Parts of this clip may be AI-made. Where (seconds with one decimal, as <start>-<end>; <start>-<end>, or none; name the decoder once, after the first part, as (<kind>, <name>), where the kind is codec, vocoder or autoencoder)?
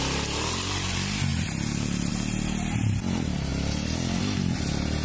none